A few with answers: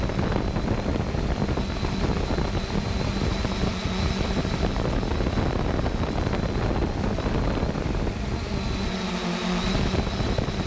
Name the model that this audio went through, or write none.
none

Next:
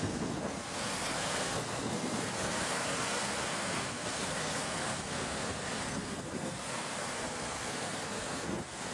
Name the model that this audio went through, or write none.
codec, SNAC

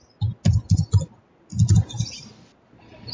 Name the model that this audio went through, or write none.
none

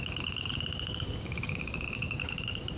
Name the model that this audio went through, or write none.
codec, DAC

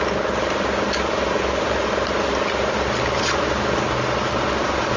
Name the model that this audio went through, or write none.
none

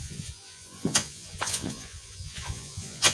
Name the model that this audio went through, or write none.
vocoder, Vocos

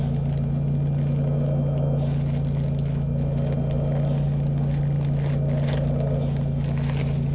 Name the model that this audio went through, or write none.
none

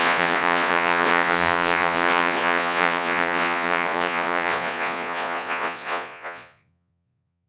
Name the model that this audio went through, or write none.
vocoder, Vocos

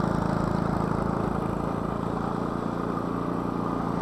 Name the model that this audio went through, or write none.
none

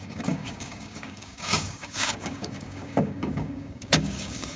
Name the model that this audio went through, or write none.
codec, DAC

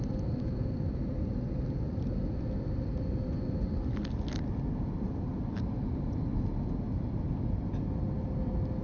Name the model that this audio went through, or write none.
none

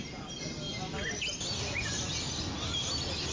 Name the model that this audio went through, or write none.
none